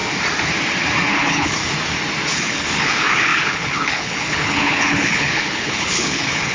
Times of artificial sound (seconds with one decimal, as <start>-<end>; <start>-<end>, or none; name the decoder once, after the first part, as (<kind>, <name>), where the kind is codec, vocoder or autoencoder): 1.1-1.6 (codec, HILCodec); 2.3-6.5